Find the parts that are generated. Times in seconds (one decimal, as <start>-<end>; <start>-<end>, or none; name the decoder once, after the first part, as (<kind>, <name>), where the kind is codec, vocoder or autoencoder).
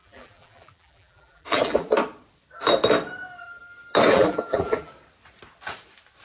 0.0-1.9 (vocoder, BigVGAN v2); 4.1-4.9